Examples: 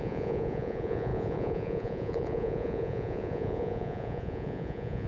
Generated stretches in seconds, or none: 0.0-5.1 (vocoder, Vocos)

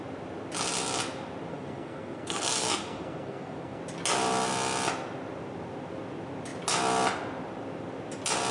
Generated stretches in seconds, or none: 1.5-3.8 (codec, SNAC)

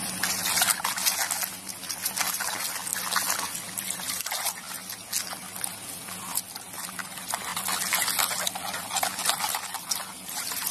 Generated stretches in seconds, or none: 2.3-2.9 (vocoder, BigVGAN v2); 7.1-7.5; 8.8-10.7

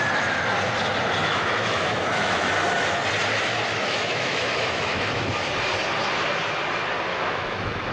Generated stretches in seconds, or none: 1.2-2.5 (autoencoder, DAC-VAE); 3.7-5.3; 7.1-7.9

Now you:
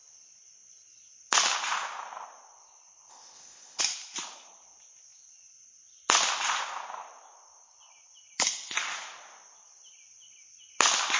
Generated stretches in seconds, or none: 3.1-3.8 (codec, ZipCodec)

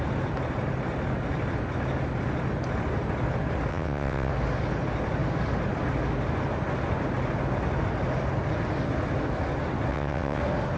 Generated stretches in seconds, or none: 3.7-4.3 (vocoder, WaveNeXt); 9.9-10.4

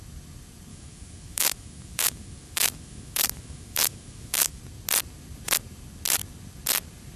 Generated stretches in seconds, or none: 0.7-4.6 (autoencoder, DAC-VAE)